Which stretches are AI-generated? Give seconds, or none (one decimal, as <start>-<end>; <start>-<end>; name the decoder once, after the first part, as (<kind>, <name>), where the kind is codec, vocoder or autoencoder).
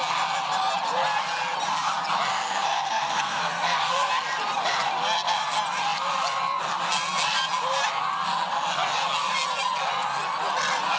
2.3-4.1 (codec, SNAC)